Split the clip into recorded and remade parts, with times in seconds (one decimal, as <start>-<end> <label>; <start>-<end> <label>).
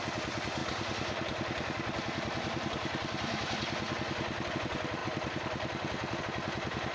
0.0-6.9 recorded